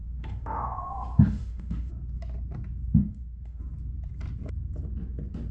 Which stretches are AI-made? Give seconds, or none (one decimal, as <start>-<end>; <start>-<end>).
0.0-1.9; 3.0-3.6